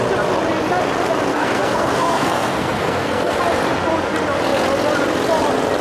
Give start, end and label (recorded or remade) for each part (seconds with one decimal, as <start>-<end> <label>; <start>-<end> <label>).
0.0-1.3 recorded; 1.3-3.4 remade; 3.4-5.8 recorded

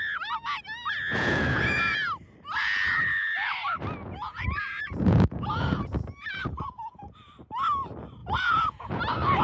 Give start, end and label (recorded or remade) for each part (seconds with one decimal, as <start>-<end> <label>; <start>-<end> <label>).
0.0-1.2 recorded; 1.2-1.9 remade; 1.9-4.0 recorded; 4.0-7.3 remade; 7.3-8.2 recorded; 8.2-9.0 remade; 9.0-9.4 recorded